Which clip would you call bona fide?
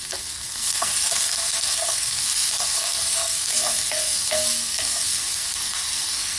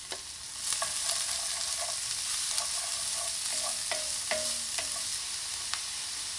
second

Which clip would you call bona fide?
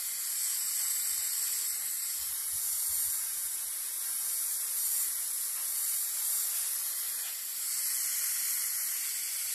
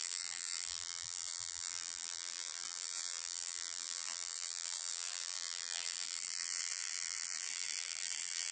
first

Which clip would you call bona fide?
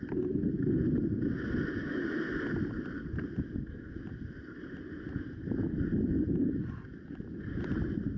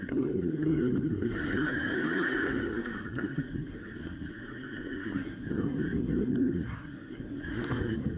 first